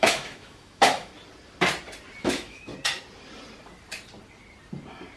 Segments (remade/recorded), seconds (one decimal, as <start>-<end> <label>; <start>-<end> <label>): 0.0-1.1 remade; 1.1-2.2 recorded; 2.2-2.7 remade; 2.7-5.2 recorded